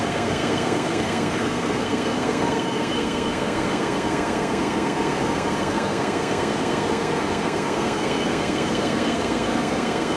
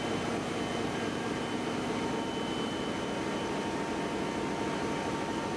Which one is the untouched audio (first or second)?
second